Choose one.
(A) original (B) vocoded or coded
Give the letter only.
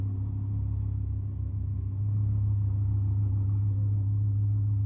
A